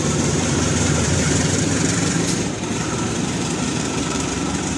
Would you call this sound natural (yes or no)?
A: no